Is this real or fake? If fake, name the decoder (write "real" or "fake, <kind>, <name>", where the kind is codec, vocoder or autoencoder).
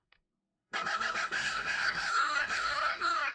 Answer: fake, codec, SNAC